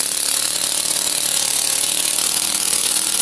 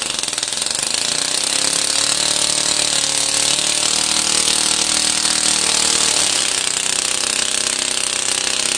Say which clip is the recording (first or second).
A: second